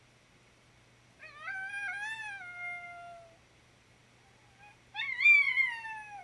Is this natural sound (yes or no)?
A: yes